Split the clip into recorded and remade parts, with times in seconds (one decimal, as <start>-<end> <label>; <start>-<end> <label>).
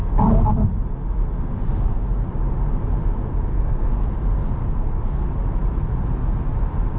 0.0-3.5 recorded; 3.5-4.1 remade; 4.1-4.6 recorded; 4.6-5.2 remade; 5.2-7.0 recorded